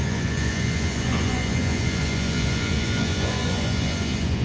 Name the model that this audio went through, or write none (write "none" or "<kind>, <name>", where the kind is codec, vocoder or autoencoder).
vocoder, Vocos